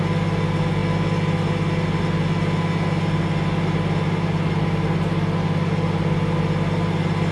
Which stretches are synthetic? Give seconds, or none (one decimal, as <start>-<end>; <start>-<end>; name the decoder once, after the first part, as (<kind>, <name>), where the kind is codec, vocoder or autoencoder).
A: none